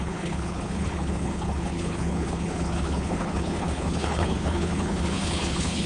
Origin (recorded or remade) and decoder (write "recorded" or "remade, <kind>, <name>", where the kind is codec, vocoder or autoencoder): remade, codec, HILCodec